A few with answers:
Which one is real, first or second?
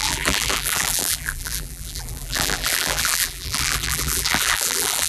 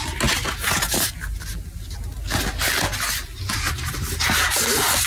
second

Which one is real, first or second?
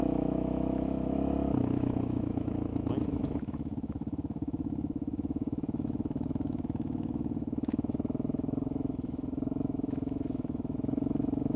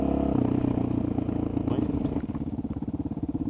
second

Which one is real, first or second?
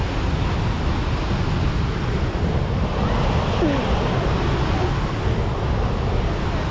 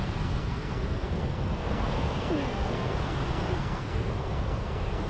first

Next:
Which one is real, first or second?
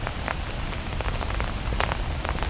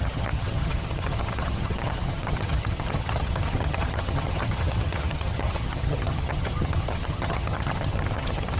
first